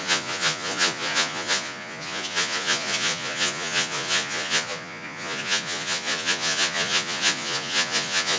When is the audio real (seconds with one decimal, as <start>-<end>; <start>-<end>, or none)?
none